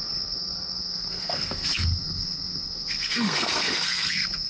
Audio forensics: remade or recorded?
remade